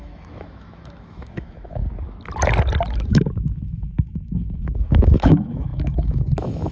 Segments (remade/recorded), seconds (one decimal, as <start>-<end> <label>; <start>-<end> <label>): 0.0-1.8 remade; 1.8-3.1 recorded; 3.1-6.7 remade